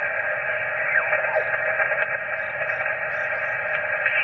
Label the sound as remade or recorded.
recorded